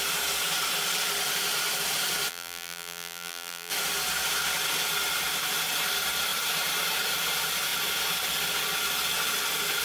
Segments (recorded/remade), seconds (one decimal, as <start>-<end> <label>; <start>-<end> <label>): 0.0-2.3 recorded; 2.3-3.7 remade; 3.7-9.8 recorded